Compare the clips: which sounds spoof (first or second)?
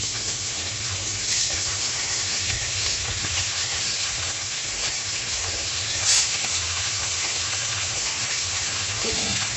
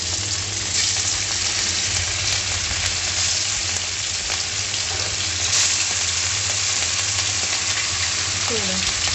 first